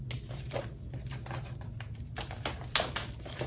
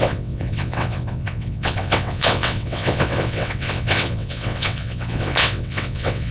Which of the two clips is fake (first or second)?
second